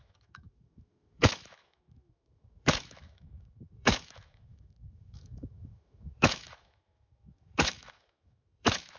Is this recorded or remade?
remade